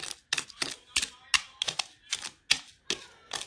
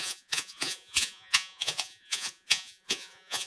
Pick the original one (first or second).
first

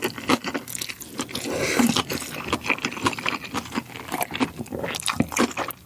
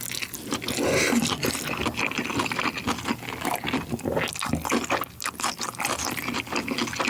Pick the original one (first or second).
second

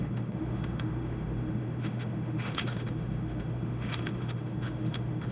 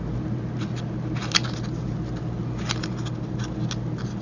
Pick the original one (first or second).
second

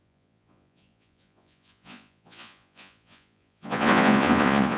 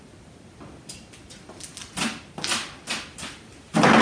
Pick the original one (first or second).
second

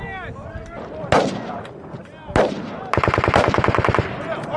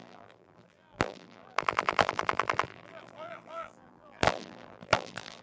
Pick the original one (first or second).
first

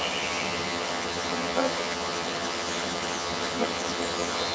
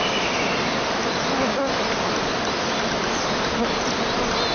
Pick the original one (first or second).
second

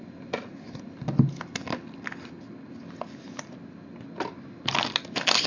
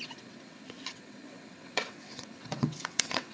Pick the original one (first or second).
first